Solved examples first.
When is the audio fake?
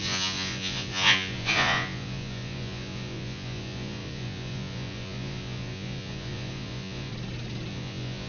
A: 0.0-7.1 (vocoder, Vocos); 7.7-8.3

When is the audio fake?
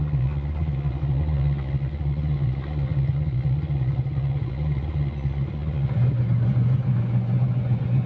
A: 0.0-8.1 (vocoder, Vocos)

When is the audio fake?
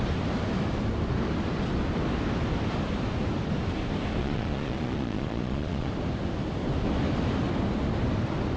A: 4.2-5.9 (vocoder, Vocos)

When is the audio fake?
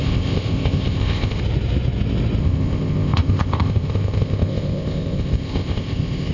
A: 0.0-1.4 (codec, ZipCodec); 2.4-6.3